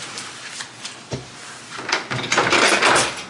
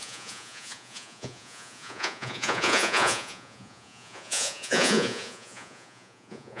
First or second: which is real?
first